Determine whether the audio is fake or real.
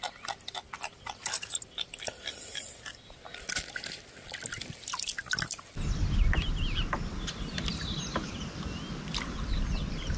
real